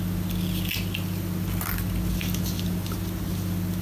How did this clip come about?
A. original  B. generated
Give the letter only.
A